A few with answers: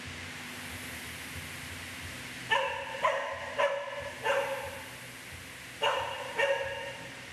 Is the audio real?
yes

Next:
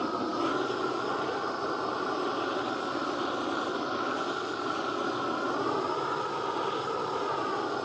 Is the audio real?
yes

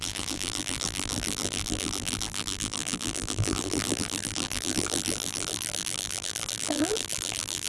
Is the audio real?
no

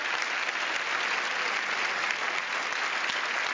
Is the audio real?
yes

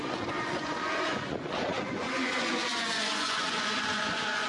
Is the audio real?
no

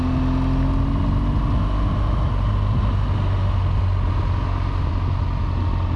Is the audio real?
yes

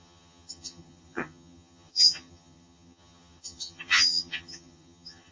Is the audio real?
no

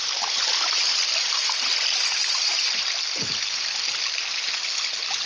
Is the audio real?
yes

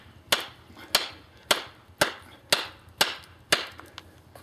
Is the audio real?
yes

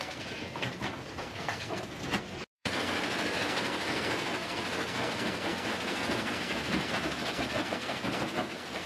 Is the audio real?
no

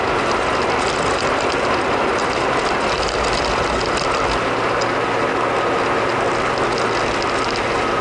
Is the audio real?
yes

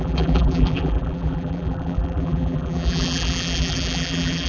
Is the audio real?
no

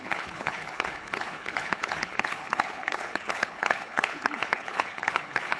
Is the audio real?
no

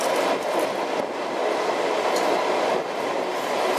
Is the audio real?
yes